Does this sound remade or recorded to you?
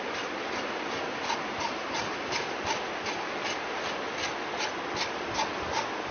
recorded